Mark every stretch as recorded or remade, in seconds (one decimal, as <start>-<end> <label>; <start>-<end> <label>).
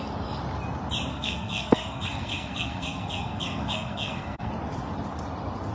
0.0-1.1 recorded; 1.1-4.5 remade; 4.5-5.7 recorded